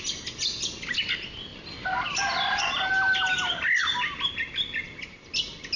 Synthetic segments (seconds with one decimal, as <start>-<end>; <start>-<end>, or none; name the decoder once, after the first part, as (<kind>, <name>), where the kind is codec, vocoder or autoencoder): none